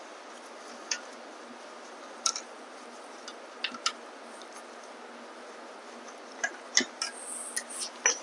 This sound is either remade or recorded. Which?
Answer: recorded